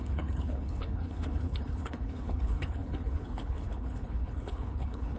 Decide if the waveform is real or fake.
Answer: fake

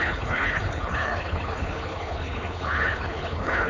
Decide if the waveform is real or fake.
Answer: fake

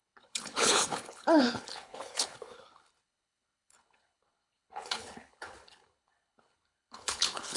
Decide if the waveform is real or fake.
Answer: fake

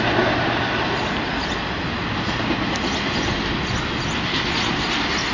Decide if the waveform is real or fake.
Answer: real